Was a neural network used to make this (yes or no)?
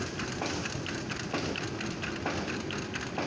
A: no